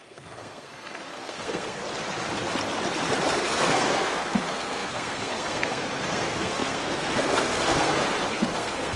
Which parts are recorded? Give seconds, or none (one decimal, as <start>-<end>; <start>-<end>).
1.8-3.3